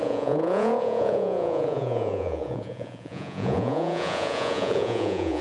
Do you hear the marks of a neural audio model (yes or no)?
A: yes